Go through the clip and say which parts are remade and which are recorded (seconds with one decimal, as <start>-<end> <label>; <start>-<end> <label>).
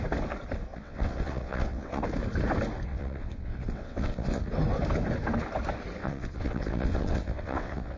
0.0-0.7 recorded; 0.7-2.0 remade; 2.0-2.9 recorded; 2.9-4.4 remade; 4.4-6.0 recorded; 6.0-8.0 remade